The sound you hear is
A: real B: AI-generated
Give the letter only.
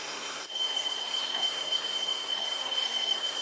B